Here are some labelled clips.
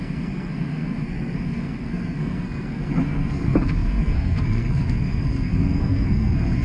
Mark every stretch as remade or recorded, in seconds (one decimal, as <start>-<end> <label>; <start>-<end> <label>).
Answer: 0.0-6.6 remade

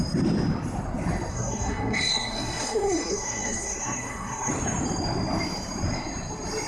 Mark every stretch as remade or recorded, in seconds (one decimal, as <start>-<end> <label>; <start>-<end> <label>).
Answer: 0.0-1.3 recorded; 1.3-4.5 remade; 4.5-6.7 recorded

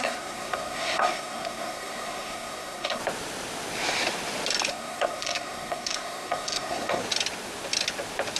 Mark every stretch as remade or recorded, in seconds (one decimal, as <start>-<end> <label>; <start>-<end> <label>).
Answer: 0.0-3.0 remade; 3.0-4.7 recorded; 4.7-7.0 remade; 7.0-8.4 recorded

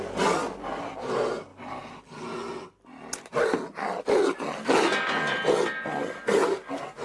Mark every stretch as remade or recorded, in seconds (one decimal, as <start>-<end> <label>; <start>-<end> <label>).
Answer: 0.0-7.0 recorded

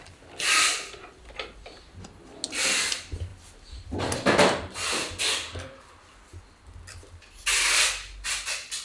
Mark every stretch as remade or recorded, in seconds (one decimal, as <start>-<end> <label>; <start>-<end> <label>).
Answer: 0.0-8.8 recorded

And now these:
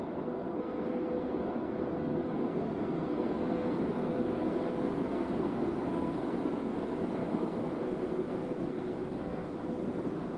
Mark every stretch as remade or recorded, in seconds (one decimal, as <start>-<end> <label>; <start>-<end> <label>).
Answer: 0.0-10.4 remade

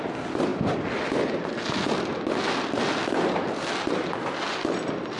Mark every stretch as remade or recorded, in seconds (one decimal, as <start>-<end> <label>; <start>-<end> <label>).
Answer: 0.0-5.2 recorded

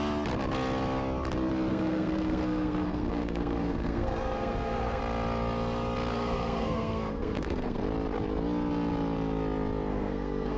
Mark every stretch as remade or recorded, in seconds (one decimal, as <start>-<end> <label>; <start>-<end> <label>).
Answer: 0.0-1.7 recorded; 1.7-5.0 remade; 5.0-6.1 recorded; 6.1-7.8 remade; 7.8-9.9 recorded; 9.9-10.6 remade